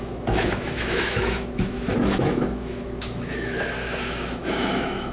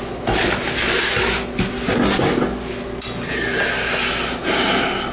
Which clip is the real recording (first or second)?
second